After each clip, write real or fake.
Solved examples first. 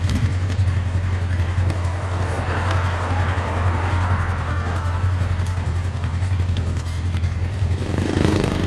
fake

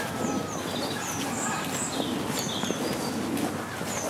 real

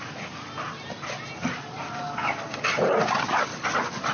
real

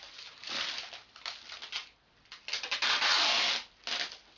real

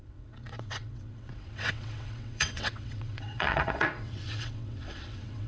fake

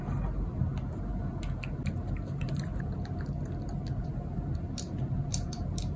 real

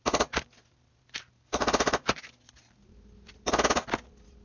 real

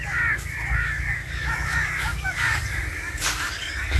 fake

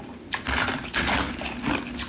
real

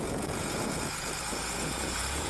fake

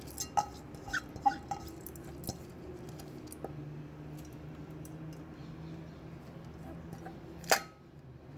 real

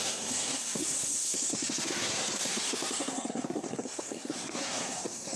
fake